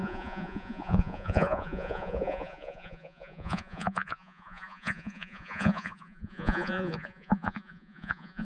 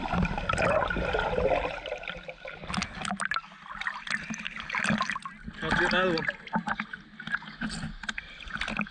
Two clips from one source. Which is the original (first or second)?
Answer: second